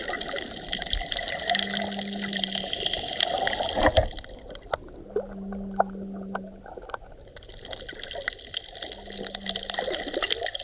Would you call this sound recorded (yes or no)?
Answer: yes